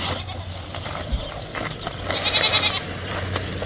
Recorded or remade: recorded